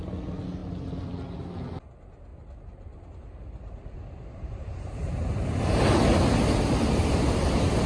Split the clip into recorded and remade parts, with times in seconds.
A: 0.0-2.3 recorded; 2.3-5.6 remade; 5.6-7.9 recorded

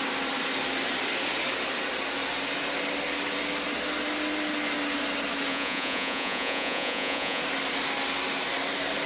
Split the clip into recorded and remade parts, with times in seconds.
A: 0.0-5.5 recorded; 5.5-7.4 remade; 7.4-9.1 recorded

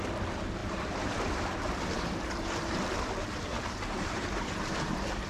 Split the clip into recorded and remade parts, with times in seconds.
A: 0.0-0.6 recorded; 0.6-2.6 remade; 2.6-3.5 recorded; 3.5-5.3 remade

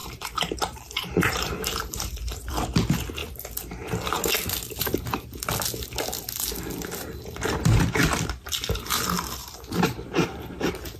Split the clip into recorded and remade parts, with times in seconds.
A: 0.0-2.5 remade; 2.5-9.4 recorded; 9.4-11.0 remade

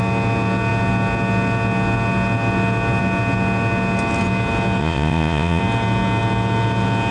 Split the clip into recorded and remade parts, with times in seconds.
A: 0.0-4.8 recorded; 4.8-5.6 remade; 5.6-7.1 recorded

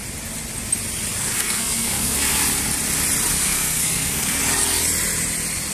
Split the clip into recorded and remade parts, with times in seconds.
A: 0.0-1.2 recorded; 1.2-2.4 remade; 2.4-3.3 recorded; 3.3-4.4 remade; 4.4-5.7 recorded

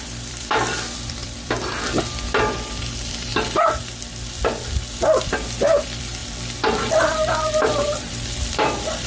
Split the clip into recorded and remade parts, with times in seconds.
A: 0.0-3.3 remade; 3.3-5.2 recorded; 5.2-6.2 remade; 6.2-6.9 recorded; 6.9-9.1 remade

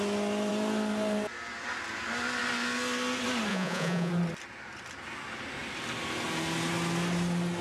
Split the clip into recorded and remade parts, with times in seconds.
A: 0.0-3.5 recorded; 3.5-4.1 remade; 4.1-7.6 recorded